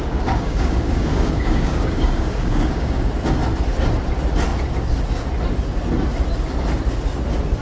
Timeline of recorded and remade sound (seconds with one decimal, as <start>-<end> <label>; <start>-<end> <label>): 0.0-3.1 remade; 3.1-7.6 recorded